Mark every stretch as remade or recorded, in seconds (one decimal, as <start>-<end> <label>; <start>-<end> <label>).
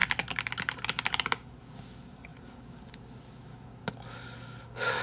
0.0-1.6 recorded; 1.6-3.8 remade; 3.8-4.6 recorded; 4.6-5.0 remade